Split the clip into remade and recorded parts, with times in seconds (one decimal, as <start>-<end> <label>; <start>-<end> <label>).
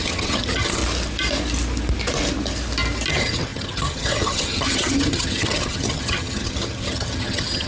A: 0.0-0.8 remade; 0.8-3.1 recorded; 3.1-7.7 remade